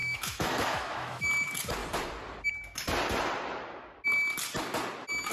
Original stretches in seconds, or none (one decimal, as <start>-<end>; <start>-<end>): 1.3-5.3